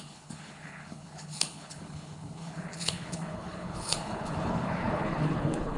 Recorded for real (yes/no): no